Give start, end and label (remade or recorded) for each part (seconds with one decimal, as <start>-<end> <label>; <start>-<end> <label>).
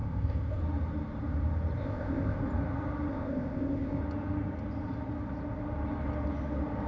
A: 0.0-0.6 remade; 0.6-1.8 recorded; 1.8-2.4 remade; 2.4-3.1 recorded; 3.1-4.0 remade; 4.0-6.9 recorded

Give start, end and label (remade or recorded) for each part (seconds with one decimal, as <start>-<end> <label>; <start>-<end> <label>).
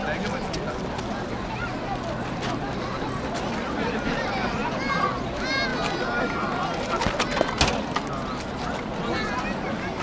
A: 0.0-10.0 recorded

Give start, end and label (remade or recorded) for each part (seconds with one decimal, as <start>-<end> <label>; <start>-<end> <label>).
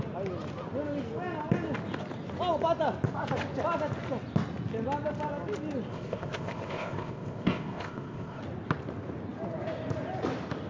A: 0.0-5.9 recorded; 5.9-8.4 remade; 8.4-10.7 recorded